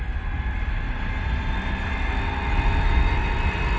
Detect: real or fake real